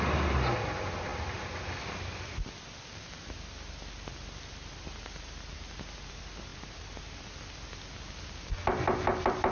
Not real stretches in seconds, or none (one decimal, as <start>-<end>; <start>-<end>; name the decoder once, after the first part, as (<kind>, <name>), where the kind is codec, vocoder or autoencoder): none